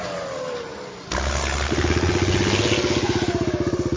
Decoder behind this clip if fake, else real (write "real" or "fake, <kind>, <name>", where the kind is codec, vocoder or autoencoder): real